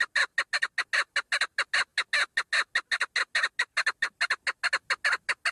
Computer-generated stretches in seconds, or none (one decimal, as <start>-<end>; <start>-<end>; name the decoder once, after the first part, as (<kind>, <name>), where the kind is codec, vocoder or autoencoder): none